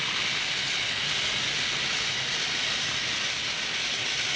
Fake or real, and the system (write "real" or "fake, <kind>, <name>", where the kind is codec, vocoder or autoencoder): real